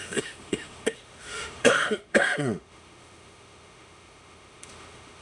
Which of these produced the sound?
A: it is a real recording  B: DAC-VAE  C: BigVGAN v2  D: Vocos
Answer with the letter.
B